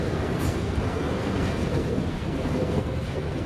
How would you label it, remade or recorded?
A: remade